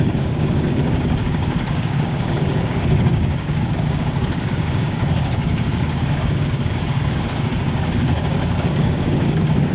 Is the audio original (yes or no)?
no